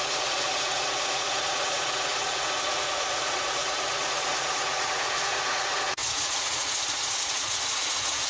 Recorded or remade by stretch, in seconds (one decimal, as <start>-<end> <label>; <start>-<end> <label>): 0.0-8.3 remade